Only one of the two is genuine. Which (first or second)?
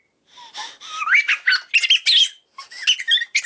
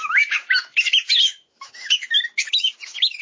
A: first